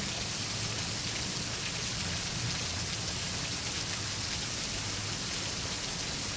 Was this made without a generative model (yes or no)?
yes